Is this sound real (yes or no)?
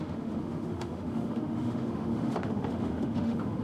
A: no